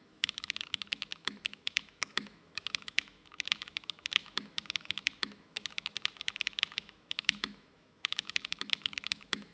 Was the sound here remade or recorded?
remade